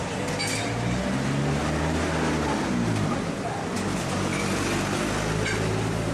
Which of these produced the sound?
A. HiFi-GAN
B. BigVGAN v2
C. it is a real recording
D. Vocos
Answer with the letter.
C